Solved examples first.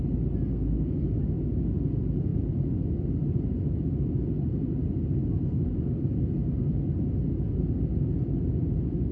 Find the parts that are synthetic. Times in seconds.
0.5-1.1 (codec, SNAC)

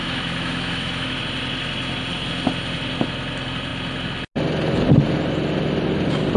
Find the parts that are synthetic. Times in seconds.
0.0-1.2 (autoencoder, DAC-VAE)